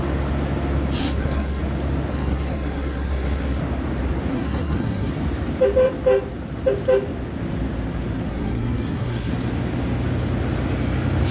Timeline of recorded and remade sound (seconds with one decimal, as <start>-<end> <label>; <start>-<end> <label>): 0.0-1.0 recorded; 1.0-1.6 remade; 1.6-2.1 recorded; 2.1-3.6 remade; 3.6-4.3 recorded; 4.3-5.1 remade; 5.1-8.3 recorded; 8.3-9.3 remade; 9.3-11.3 recorded

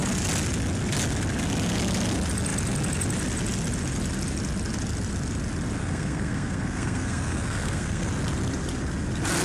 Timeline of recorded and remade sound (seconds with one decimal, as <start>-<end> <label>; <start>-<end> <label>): 0.0-5.8 recorded; 5.8-8.1 remade; 8.1-9.4 recorded

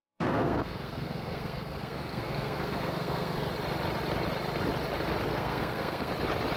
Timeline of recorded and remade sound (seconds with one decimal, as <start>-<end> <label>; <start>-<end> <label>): 0.0-3.5 remade; 3.5-5.3 recorded; 5.3-6.1 remade; 6.1-6.6 recorded

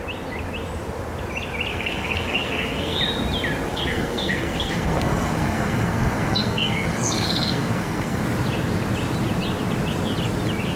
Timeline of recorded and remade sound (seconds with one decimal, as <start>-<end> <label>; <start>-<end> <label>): 0.0-1.7 recorded; 1.7-3.0 remade; 3.0-3.7 recorded; 3.7-8.2 remade; 8.2-10.8 recorded

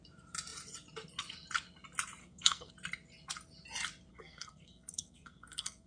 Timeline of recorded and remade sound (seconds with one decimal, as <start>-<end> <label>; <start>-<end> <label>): 0.0-2.2 recorded; 2.2-2.7 remade; 2.7-4.1 recorded; 4.1-5.9 remade

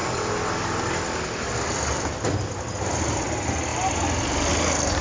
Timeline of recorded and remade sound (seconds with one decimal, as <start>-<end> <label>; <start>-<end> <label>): 0.0-5.0 recorded

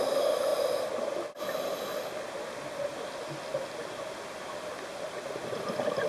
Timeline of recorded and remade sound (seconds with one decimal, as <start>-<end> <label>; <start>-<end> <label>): 0.0-6.1 recorded